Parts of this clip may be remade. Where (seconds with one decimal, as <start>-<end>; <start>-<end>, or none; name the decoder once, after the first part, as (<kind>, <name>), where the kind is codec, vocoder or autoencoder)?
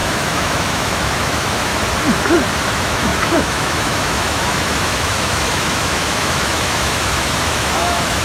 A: 0.0-1.7 (autoencoder, DAC-VAE); 2.7-8.2